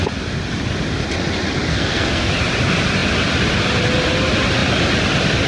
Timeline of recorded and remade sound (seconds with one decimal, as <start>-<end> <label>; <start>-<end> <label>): 0.0-1.7 recorded; 1.7-2.3 remade; 2.3-5.5 recorded